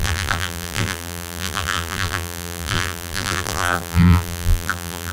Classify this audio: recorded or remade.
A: remade